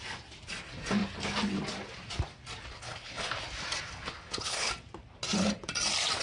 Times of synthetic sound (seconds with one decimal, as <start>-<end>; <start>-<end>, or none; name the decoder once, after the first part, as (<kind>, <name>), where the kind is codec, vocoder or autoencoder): 2.7-3.3 (codec, HILCodec); 4.1-4.7